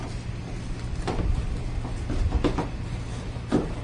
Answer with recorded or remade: recorded